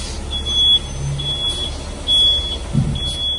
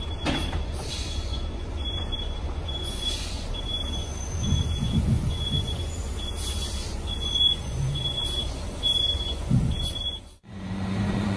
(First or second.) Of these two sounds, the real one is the first